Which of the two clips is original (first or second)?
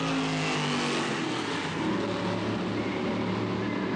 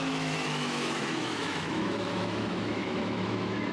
first